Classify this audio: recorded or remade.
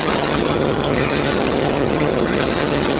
remade